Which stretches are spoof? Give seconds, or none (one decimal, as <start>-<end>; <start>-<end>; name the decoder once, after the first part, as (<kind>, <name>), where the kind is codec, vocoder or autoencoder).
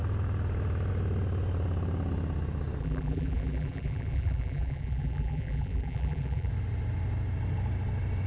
2.8-6.5 (vocoder, BigVGAN v2)